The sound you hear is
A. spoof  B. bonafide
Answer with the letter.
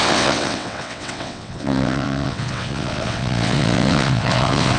A